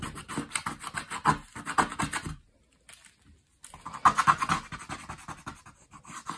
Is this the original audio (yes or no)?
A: yes